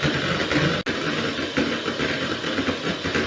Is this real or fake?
real